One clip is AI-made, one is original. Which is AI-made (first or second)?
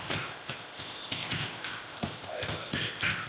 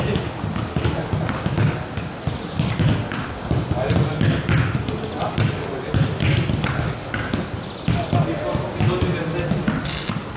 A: first